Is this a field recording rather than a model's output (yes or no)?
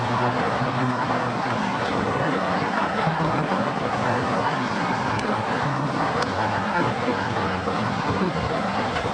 no